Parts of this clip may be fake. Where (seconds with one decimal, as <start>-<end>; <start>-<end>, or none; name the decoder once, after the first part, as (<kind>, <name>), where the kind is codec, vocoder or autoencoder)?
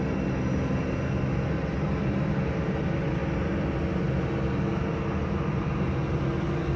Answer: none